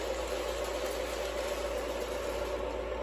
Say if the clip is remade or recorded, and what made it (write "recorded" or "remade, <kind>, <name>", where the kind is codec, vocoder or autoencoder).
recorded